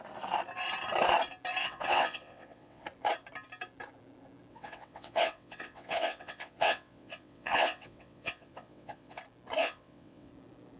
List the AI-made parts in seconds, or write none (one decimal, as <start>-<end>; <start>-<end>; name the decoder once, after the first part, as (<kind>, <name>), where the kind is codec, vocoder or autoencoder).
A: 1.6-2.8 (vocoder, WaveNeXt); 4.5-9.2; 9.6-10.3